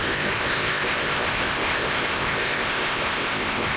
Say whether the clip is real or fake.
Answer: fake